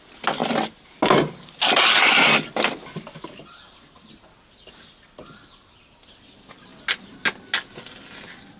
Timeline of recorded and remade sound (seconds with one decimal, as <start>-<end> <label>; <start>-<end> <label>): 0.0-8.6 recorded